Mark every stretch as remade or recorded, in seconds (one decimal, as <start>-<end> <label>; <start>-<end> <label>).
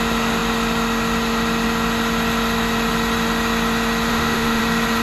0.0-4.1 recorded; 4.1-4.6 remade; 4.6-5.0 recorded